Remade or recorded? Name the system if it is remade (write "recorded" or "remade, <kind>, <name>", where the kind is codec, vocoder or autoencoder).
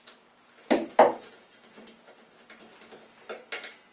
recorded